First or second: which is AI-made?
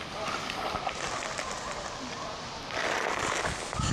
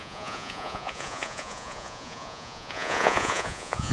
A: second